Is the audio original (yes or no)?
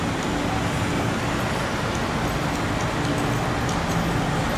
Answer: yes